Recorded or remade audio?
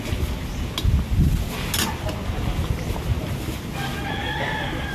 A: recorded